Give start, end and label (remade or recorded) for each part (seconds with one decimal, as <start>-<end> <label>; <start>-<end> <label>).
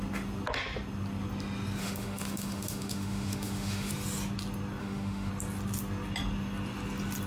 0.0-1.8 recorded; 1.8-3.9 remade; 3.9-4.8 recorded; 4.8-5.3 remade; 5.3-7.3 recorded